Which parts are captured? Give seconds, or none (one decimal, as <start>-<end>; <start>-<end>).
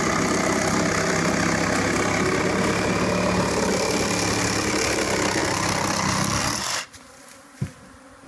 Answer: 0.0-8.3